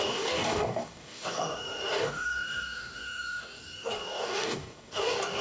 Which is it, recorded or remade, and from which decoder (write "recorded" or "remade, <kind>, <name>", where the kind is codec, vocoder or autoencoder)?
remade, codec, DAC